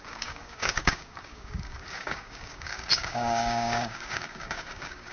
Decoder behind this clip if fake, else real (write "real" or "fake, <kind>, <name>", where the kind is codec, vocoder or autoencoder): fake, codec, DAC